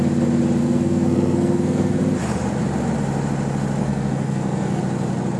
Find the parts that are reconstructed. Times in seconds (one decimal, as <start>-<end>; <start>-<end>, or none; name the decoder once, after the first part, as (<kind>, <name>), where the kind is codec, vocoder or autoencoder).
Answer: 0.6-2.0 (codec, SNAC); 3.8-4.8